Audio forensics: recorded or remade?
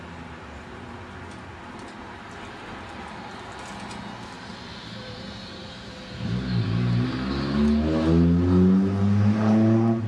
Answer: recorded